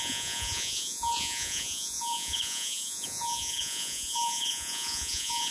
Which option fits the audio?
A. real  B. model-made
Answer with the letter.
B